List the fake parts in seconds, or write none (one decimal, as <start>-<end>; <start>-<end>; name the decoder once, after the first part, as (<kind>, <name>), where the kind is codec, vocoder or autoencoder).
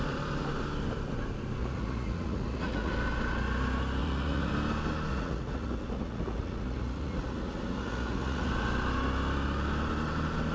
1.6-2.9 (vocoder, Vocos); 4.0-4.5; 5.1-8.5